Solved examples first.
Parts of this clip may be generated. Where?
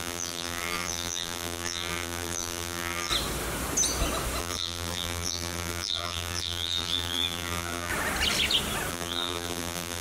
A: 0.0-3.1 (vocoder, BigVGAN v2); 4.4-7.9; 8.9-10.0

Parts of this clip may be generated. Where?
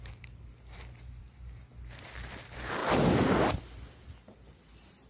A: 0.0-2.8 (vocoder, BigVGAN v2); 4.4-5.1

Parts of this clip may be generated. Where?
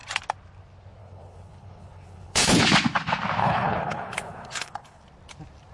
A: 1.0-2.6 (codec, HILCodec); 3.4-5.0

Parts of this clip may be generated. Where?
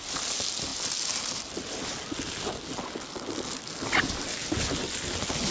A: none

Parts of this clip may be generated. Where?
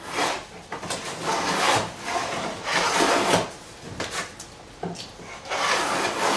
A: none